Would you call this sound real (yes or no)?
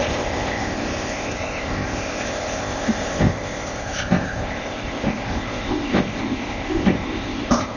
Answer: no